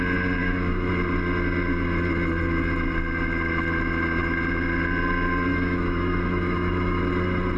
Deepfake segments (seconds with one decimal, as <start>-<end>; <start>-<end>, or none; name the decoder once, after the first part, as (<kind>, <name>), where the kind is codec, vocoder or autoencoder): 0.4-0.9 (autoencoder, DAC-VAE); 5.5-7.0